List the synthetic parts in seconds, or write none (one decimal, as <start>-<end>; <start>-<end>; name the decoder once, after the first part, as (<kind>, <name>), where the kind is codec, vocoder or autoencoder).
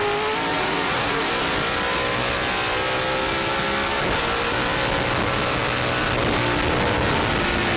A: 0.5-1.2 (vocoder, Vocos)